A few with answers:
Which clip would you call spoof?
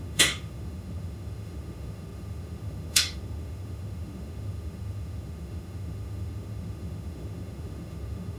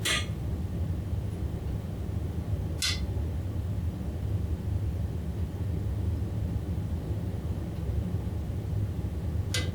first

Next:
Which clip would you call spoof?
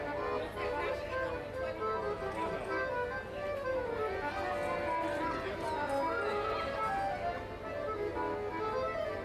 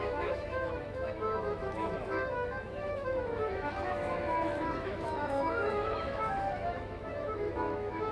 second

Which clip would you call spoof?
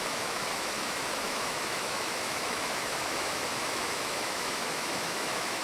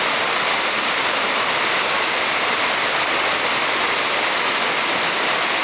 first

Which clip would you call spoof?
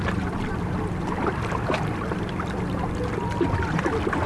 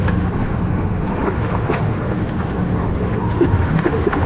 second